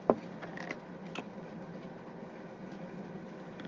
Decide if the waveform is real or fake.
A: real